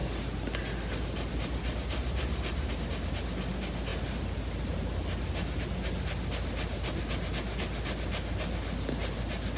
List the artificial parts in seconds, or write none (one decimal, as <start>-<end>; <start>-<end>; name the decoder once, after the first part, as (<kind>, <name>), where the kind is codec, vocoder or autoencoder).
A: none

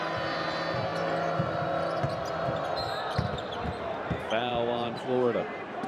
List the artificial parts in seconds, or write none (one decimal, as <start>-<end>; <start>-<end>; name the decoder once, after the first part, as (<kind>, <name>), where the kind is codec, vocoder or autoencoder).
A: 4.5-5.9 (vocoder, BigVGAN v2)